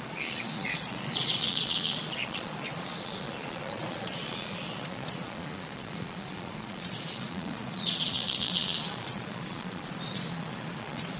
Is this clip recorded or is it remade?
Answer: remade